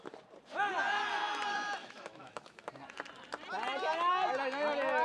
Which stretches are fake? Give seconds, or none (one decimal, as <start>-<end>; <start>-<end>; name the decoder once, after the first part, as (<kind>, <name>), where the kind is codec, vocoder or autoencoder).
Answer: 1.8-2.7 (autoencoder, DAC-VAE)